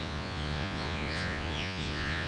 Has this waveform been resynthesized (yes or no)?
yes